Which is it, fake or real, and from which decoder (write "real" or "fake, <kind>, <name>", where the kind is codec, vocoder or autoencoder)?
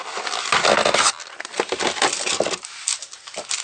real